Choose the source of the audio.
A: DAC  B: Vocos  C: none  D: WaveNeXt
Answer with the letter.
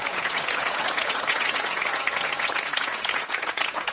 B